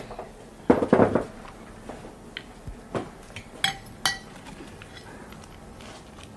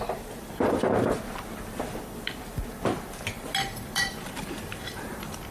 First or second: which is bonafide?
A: first